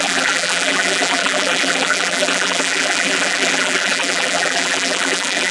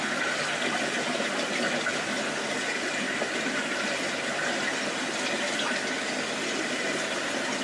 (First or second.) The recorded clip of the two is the second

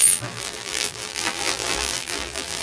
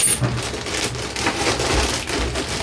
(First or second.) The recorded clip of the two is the second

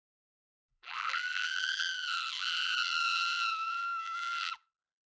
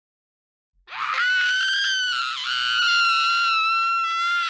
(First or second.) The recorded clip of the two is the second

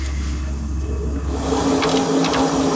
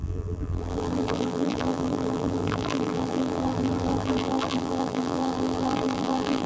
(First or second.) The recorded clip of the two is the first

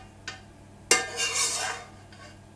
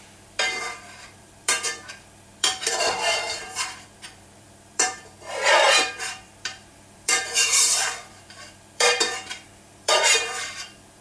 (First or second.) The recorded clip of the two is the first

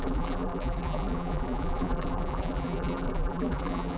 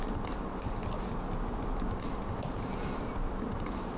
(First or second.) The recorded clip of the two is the second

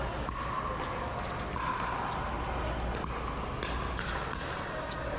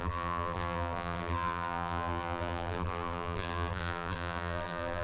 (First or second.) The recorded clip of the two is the first